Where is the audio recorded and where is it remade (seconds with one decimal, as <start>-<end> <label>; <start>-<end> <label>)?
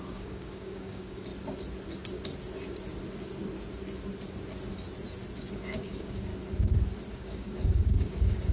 0.0-1.3 remade; 1.3-5.5 recorded; 5.5-6.3 remade; 6.3-7.1 recorded; 7.1-8.5 remade